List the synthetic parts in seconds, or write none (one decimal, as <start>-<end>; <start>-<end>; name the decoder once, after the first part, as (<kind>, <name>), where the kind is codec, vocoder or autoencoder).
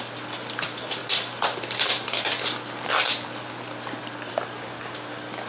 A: none